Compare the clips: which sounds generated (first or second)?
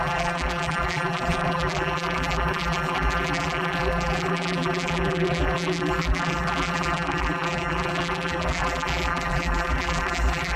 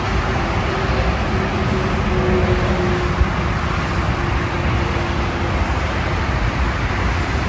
first